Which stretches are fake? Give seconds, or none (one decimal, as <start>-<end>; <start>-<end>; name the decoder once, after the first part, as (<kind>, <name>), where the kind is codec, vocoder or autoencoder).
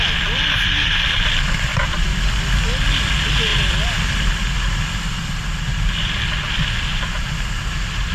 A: 1.7-2.3 (vocoder, BigVGAN v2); 3.5-5.2; 5.7-6.3